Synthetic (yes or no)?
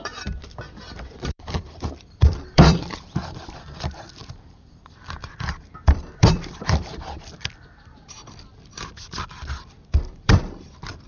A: yes